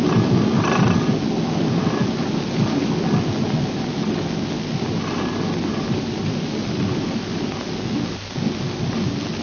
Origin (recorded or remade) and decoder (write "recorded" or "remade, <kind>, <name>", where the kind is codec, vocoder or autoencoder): recorded